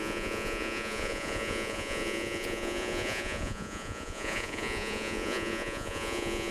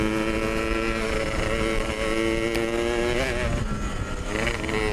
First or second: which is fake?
first